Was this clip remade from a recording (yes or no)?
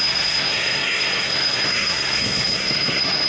yes